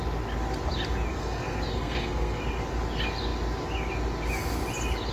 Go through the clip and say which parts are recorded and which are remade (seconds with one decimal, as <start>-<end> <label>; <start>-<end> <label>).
0.0-1.1 recorded; 1.1-2.4 remade; 2.4-5.1 recorded